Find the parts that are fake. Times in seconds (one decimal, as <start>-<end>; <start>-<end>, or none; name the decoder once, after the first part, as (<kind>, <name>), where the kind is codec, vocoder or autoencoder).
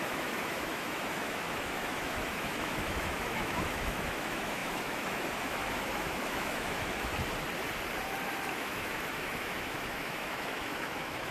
0.0-7.1 (autoencoder, DAC-VAE); 8.5-11.3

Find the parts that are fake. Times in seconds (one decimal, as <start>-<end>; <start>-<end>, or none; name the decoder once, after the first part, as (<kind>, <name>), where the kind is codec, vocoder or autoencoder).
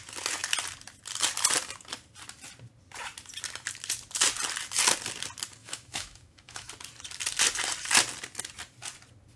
5.6-6.7 (autoencoder, DAC-VAE)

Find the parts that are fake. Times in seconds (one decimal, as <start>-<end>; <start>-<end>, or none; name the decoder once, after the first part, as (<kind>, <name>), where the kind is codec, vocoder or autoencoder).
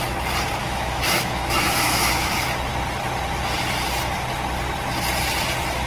0.6-2.3 (autoencoder, DAC-VAE)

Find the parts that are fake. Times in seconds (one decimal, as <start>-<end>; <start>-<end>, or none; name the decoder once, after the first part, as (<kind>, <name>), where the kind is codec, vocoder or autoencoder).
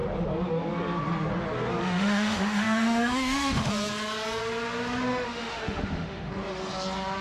1.8-3.7 (autoencoder, DAC-VAE); 5.1-6.3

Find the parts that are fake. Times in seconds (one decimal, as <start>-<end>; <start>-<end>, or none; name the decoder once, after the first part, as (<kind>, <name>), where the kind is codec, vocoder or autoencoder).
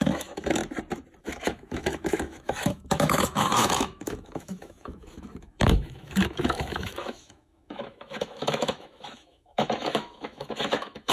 0.0-0.6 (autoencoder, DAC-VAE); 1.2-11.1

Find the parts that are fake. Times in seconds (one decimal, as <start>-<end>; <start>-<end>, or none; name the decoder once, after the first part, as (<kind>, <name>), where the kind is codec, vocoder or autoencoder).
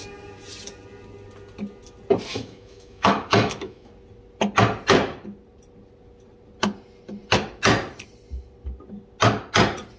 2.3-3.9 (autoencoder, DAC-VAE)